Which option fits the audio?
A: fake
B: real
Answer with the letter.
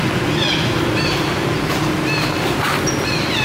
B